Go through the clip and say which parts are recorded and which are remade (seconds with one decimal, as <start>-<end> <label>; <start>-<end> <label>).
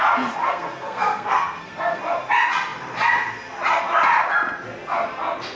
0.0-0.4 recorded; 0.4-2.0 remade; 2.0-5.6 recorded